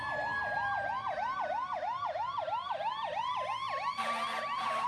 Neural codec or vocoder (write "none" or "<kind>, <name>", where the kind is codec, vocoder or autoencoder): none